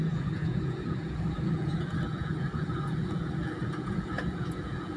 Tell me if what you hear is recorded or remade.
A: remade